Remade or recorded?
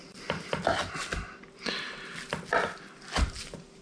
recorded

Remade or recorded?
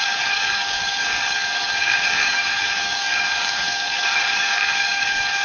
remade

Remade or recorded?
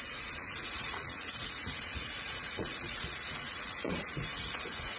remade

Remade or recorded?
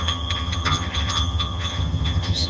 remade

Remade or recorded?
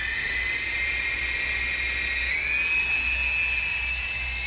recorded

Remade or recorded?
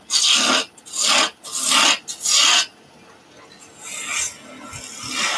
recorded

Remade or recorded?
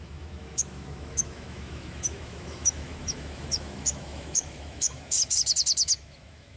remade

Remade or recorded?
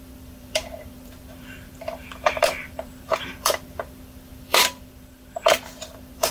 remade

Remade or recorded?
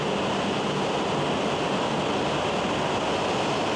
recorded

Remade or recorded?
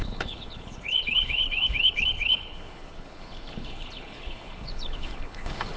remade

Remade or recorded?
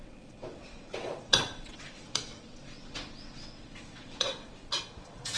remade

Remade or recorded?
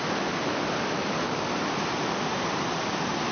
recorded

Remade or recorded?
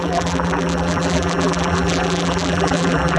remade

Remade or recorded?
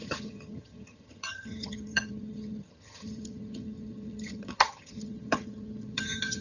remade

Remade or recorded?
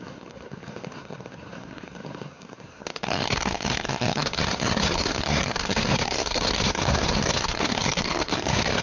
remade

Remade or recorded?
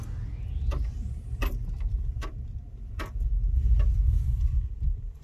remade